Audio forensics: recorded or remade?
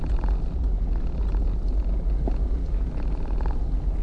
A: recorded